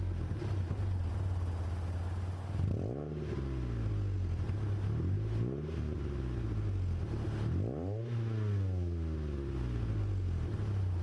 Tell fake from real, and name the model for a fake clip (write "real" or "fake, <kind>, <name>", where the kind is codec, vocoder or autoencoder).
real